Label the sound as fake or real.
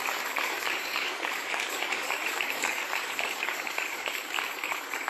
fake